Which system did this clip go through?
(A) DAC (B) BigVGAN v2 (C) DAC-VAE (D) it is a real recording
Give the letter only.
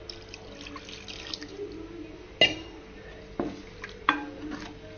D